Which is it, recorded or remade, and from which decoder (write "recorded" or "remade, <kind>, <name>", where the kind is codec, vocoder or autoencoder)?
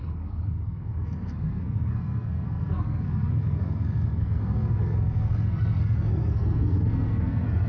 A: remade, codec, SNAC